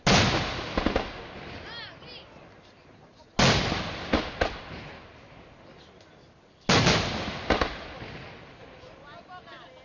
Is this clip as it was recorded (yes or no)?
yes